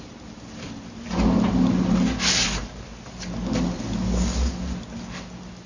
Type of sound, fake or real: real